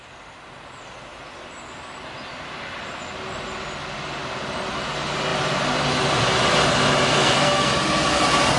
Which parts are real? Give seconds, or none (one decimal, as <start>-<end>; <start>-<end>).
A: 0.0-7.1; 7.7-8.6